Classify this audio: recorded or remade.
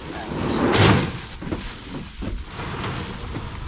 recorded